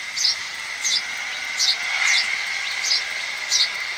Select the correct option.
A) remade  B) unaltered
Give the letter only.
B